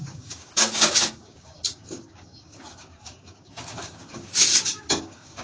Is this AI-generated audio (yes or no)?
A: yes